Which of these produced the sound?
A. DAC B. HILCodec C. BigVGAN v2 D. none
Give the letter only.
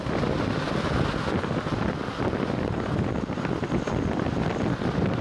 D